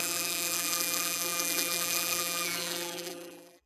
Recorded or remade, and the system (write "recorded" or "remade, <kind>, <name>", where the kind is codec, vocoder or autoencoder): remade, vocoder, BigVGAN v2